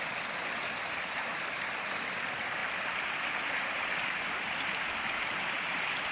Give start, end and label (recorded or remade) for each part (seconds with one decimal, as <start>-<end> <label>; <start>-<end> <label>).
0.0-6.1 recorded